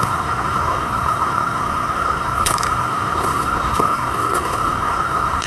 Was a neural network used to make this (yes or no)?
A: yes